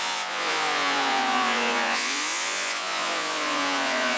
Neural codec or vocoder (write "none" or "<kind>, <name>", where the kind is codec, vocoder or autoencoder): vocoder, Vocos